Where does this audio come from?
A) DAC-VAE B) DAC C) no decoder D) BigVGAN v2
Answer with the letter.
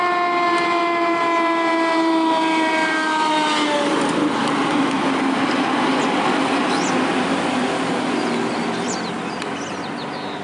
C